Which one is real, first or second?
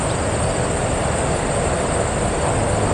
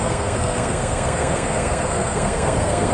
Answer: first